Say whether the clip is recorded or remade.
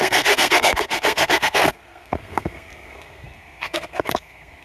remade